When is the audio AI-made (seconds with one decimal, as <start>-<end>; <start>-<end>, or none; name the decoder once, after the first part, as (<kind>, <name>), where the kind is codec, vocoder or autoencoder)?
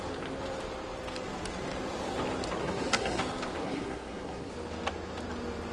2.6-3.2 (codec, SNAC); 3.6-4.5